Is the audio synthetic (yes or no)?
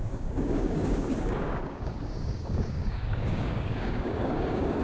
yes